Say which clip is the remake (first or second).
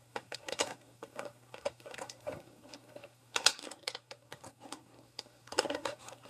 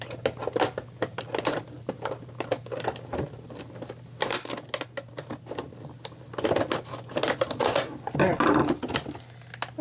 first